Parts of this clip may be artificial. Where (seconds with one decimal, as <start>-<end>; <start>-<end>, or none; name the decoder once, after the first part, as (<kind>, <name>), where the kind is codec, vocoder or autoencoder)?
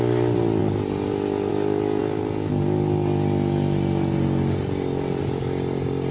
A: none